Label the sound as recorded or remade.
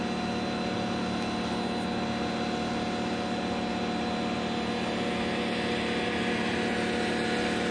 recorded